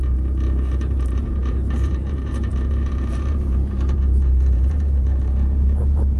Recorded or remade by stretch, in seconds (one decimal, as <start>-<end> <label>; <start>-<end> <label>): 0.0-6.2 remade